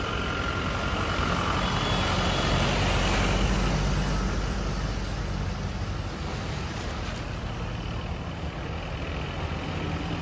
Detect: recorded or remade recorded